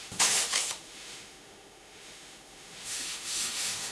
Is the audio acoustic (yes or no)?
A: no